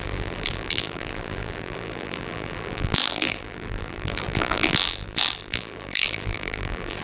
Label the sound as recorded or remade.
remade